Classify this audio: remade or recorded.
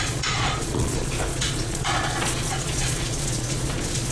remade